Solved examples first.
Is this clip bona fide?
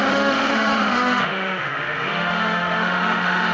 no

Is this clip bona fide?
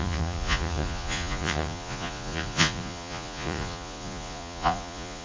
no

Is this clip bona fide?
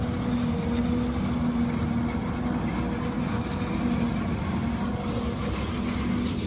yes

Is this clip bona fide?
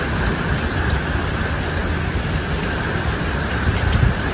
yes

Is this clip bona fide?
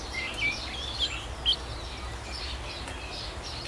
yes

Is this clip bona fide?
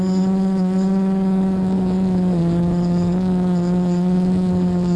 no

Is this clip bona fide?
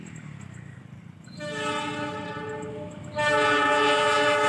yes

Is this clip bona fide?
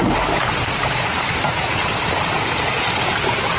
yes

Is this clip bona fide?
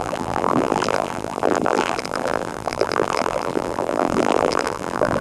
no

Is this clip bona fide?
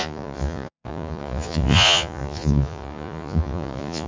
no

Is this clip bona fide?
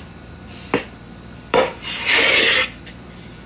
no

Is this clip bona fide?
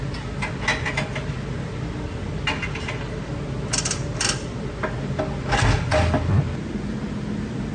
yes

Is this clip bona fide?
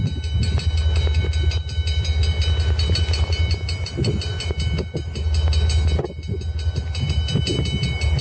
yes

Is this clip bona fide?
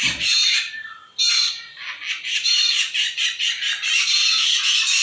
yes